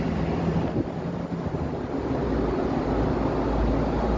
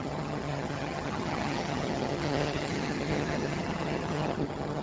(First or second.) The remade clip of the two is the second